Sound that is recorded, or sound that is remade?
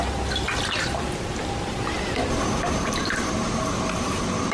recorded